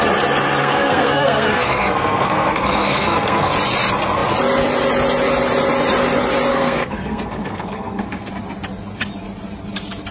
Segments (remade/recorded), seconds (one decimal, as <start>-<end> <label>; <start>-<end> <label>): 0.0-0.6 recorded; 0.6-3.5 remade; 3.5-6.5 recorded; 6.5-8.3 remade; 8.3-10.1 recorded